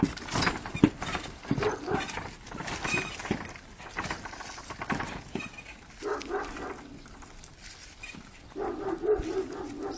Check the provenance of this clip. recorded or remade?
remade